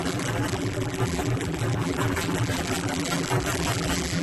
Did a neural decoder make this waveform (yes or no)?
yes